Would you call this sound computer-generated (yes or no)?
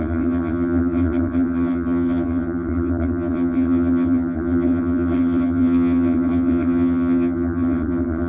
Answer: yes